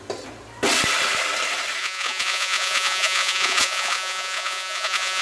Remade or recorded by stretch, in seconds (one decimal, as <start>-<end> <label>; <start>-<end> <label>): 0.0-1.8 recorded; 1.8-5.2 remade